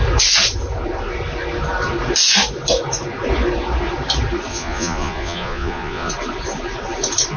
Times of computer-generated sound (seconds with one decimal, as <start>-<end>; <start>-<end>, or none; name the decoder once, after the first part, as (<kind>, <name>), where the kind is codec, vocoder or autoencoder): 4.5-6.1 (vocoder, Vocos)